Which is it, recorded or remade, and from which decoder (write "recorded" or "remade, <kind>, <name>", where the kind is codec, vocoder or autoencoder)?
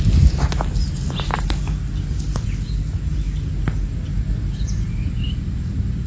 recorded